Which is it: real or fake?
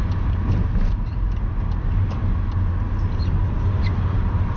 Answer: real